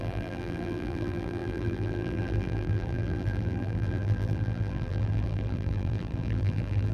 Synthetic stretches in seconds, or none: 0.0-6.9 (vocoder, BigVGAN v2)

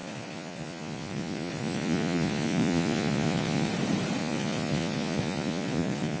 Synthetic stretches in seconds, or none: 0.0-3.7 (vocoder, Vocos); 4.2-6.2